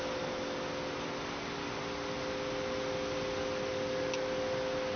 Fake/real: real